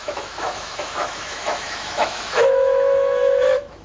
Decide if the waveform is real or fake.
fake